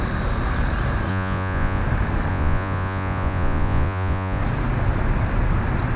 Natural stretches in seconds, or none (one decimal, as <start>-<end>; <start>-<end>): 0.0-1.1; 1.8-2.3; 4.4-6.0